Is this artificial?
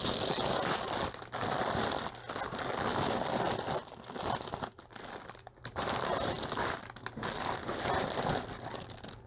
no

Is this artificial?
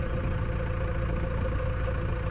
no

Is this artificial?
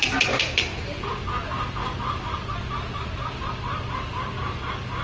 no